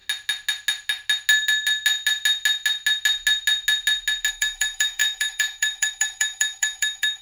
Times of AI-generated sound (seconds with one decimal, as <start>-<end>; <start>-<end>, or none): 4.3-7.2